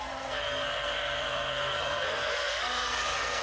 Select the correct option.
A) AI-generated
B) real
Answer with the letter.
A